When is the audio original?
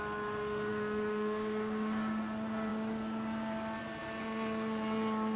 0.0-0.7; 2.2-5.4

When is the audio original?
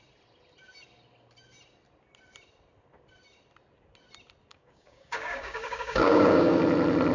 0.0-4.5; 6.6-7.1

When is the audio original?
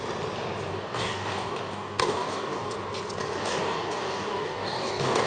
0.0-0.7; 2.7-3.4